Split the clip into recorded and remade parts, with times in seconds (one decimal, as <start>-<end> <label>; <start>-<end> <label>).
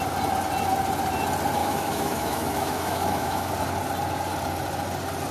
0.0-1.6 recorded; 1.6-3.5 remade; 3.5-5.3 recorded